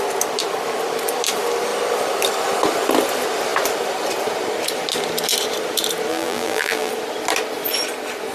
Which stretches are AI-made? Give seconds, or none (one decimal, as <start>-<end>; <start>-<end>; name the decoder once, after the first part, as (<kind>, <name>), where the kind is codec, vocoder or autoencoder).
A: 6.1-6.9 (vocoder, BigVGAN v2)